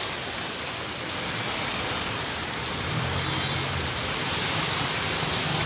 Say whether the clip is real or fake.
real